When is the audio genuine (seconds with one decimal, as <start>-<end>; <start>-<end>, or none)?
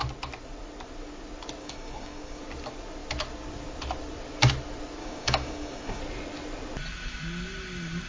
0.0-1.6; 2.4-5.0; 6.0-8.1